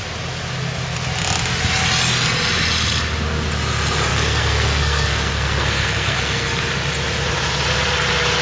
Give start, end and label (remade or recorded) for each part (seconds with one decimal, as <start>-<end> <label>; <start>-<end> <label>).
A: 0.0-4.1 recorded; 4.1-6.7 remade; 6.7-8.4 recorded